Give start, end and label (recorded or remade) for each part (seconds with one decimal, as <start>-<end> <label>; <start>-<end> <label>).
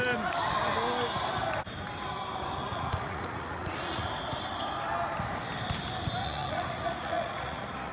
0.0-2.6 recorded; 2.6-4.1 remade; 4.1-6.2 recorded; 6.2-7.9 remade